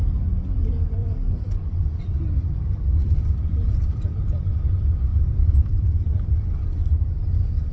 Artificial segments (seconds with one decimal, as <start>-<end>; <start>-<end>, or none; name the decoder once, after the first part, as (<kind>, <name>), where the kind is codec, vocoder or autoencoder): 1.0-4.0 (vocoder, BigVGAN v2); 5.1-7.7

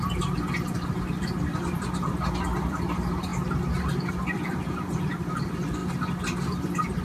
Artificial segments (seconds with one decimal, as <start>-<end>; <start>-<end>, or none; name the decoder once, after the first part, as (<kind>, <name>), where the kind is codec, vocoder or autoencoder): 0.0-3.3 (vocoder, BigVGAN v2); 4.1-5.8; 6.6-7.0

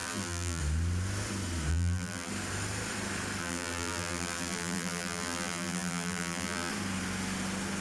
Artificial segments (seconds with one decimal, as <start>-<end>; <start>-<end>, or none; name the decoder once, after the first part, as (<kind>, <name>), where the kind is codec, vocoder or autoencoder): 0.0-0.6 (vocoder, BigVGAN v2); 1.7-2.3; 3.4-6.7

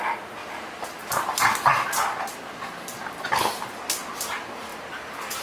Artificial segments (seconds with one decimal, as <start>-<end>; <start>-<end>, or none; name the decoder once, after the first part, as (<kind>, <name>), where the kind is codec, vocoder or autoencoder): 0.4-1.0 (vocoder, BigVGAN v2); 4.7-5.4